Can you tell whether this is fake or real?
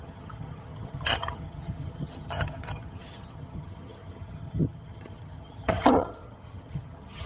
fake